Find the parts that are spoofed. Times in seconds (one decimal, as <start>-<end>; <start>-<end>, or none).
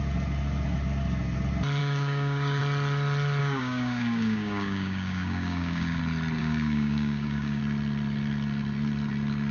1.8-2.6; 3.4-6.0; 6.4-7.6